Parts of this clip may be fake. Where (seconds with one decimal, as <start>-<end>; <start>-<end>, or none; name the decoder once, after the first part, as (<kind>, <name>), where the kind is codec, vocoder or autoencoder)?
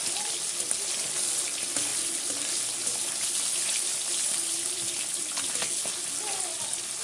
none